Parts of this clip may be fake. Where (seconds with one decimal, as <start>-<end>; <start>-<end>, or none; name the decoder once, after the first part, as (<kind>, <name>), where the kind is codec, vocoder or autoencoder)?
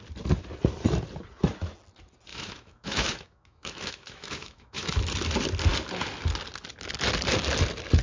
2.3-5.0 (autoencoder, DAC-VAE)